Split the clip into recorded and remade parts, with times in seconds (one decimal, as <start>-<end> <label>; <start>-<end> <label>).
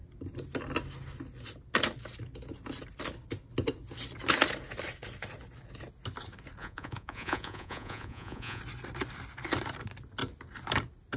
0.0-6.6 recorded; 6.6-8.6 remade; 8.6-11.2 recorded